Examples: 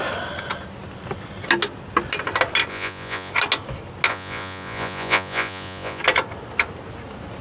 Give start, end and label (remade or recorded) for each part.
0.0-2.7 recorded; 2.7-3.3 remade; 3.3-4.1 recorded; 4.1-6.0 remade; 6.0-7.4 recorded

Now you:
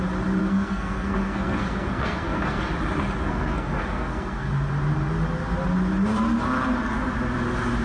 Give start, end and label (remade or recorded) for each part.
0.0-0.4 recorded; 0.4-2.6 remade; 2.6-3.3 recorded; 3.3-4.5 remade; 4.5-7.8 recorded